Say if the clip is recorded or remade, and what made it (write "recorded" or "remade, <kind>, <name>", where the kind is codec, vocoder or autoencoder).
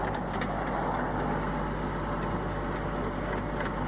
recorded